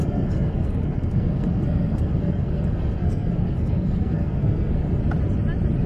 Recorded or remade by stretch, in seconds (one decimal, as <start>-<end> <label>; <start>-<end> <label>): 0.0-5.0 remade; 5.0-5.9 recorded